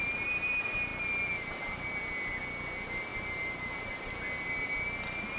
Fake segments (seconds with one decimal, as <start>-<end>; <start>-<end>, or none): none